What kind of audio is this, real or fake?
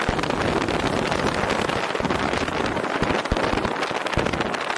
real